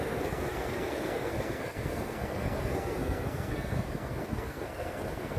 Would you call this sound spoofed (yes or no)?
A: yes